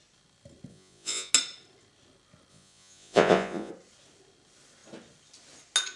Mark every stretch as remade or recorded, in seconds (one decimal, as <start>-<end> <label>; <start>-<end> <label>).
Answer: 0.0-0.7 recorded; 0.7-1.3 remade; 1.3-2.5 recorded; 2.5-3.7 remade; 3.7-6.0 recorded